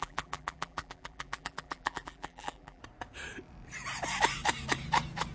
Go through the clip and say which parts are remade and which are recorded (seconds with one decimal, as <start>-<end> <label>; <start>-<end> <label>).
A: 0.0-2.8 remade; 2.8-5.3 recorded